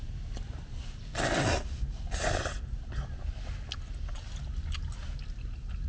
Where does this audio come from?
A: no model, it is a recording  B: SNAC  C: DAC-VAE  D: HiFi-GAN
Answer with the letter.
A